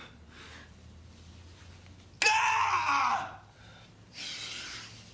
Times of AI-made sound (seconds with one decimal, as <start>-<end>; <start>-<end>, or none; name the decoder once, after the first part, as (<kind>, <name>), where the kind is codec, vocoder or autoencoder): none